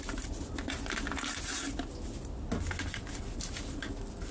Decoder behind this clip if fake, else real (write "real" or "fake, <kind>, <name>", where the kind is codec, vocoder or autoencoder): real